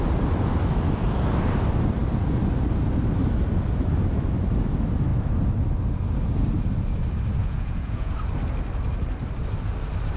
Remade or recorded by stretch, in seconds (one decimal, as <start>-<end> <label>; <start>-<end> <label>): 0.0-7.4 recorded; 7.4-8.1 remade; 8.1-10.2 recorded